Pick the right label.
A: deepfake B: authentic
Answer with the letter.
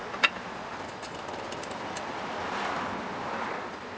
B